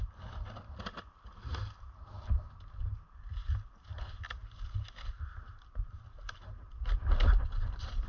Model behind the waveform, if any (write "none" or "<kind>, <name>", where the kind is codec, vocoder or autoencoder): none